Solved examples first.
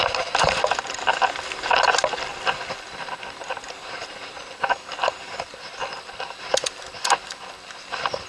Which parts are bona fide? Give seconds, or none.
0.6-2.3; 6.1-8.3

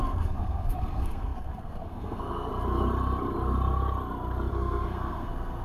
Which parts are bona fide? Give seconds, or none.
2.5-4.5

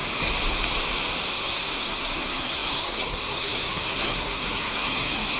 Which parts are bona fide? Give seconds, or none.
0.0-1.3

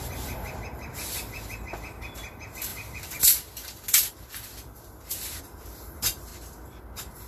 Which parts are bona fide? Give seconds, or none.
6.3-6.8

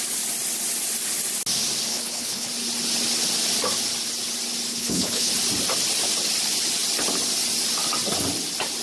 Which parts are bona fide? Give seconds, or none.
0.0-1.9; 2.5-4.7; 5.3-8.8